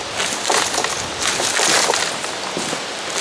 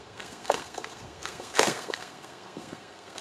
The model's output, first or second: second